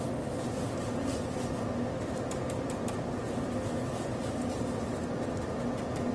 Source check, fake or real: real